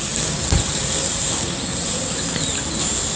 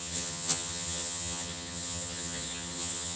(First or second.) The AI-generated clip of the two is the second